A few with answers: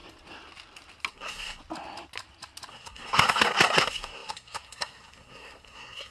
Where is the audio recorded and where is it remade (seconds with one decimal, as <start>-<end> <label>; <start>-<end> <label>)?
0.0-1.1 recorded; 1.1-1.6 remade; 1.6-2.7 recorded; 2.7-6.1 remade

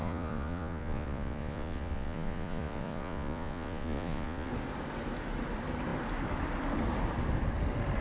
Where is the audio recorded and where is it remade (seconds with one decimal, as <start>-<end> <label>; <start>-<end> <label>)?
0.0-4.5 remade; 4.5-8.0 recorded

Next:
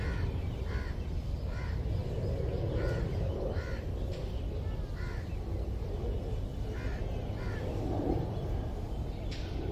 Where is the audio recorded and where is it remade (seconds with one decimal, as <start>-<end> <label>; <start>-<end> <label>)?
0.0-9.7 recorded

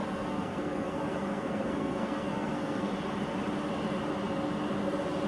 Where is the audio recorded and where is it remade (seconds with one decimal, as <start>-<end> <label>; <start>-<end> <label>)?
0.0-2.9 remade; 2.9-5.3 recorded

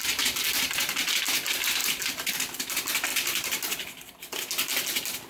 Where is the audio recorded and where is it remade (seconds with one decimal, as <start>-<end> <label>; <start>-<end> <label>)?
0.0-1.8 recorded; 1.8-2.3 remade; 2.3-5.3 recorded

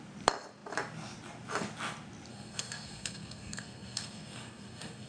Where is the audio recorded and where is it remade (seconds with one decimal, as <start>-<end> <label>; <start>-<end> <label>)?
0.0-2.3 recorded; 2.3-5.1 remade

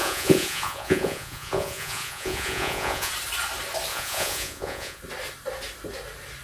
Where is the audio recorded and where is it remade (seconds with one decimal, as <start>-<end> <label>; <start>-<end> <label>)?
0.0-3.1 remade; 3.1-3.9 recorded; 3.9-5.0 remade; 5.0-6.4 recorded

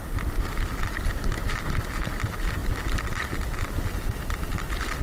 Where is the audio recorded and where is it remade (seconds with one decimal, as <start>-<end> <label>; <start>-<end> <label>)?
0.0-5.0 recorded